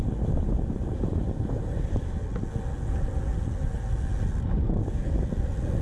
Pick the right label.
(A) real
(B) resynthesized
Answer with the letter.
A